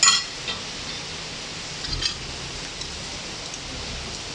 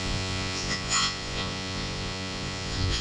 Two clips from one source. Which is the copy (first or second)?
second